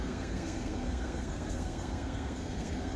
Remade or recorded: remade